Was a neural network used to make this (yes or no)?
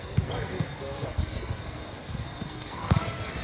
yes